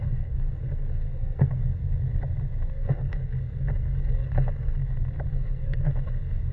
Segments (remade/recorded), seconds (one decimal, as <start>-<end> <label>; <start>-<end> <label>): 0.0-1.8 remade; 1.8-2.7 recorded; 2.7-4.8 remade; 4.8-5.3 recorded; 5.3-6.5 remade